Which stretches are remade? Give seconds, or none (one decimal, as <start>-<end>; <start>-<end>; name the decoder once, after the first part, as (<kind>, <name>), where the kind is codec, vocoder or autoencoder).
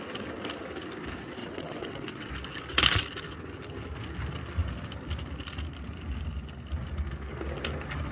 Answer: 1.4-2.3 (vocoder, WaveNeXt)